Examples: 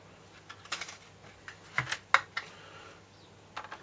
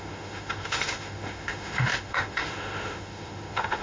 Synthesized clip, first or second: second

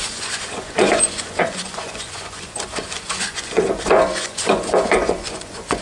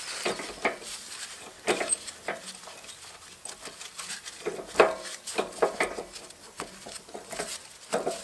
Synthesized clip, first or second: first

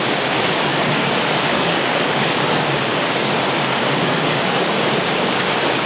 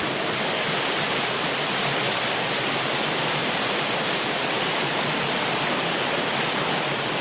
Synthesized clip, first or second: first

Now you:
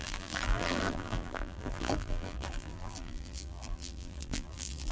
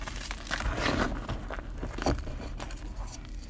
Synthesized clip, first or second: first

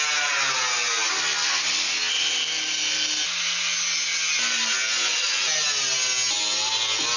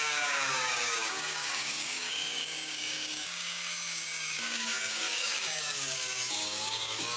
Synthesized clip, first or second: second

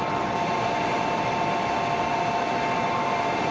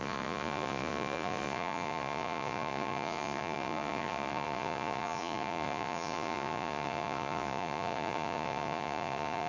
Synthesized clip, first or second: second